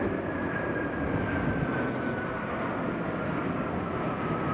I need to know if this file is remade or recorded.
recorded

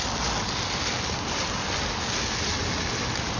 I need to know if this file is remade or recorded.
recorded